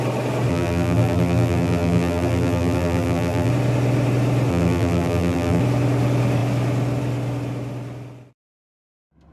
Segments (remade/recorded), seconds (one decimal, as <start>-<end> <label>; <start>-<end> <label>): 0.0-0.5 recorded; 0.5-3.5 remade; 3.5-4.5 recorded; 4.5-5.6 remade; 5.6-9.3 recorded